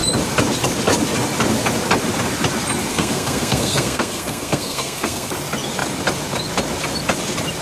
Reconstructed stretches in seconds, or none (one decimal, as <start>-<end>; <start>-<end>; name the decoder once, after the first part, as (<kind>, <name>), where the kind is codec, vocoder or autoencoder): 2.9-5.3 (codec, SNAC)